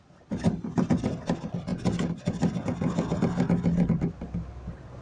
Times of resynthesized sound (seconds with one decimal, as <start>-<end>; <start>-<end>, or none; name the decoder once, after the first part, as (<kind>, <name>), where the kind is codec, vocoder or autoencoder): none